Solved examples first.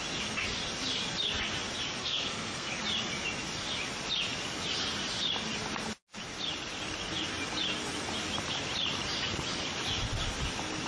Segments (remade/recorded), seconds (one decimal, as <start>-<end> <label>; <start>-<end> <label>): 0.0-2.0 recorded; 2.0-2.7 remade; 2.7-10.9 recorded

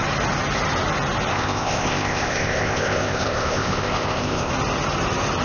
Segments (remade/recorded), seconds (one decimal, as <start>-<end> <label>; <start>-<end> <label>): 0.0-1.3 recorded; 1.3-4.5 remade; 4.5-5.4 recorded

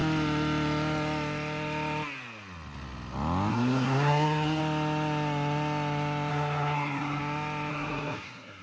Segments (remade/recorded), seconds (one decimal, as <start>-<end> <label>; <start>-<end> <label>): 0.0-3.5 recorded; 3.5-4.6 remade; 4.6-6.3 recorded; 6.3-7.2 remade; 7.2-7.7 recorded; 7.7-8.6 remade

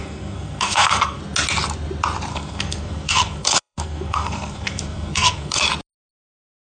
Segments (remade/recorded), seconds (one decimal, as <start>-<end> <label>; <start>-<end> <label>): 0.0-1.2 remade; 1.2-2.3 recorded; 2.3-5.6 remade; 5.6-6.8 recorded

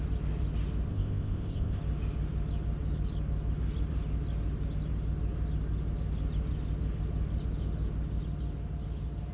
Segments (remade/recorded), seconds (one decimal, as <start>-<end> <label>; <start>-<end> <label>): 0.0-0.9 recorded; 0.9-1.8 remade; 1.8-9.3 recorded